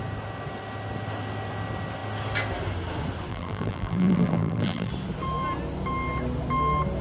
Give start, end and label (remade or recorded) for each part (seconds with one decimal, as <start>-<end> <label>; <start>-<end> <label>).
0.0-3.3 recorded; 3.3-4.9 remade; 4.9-7.0 recorded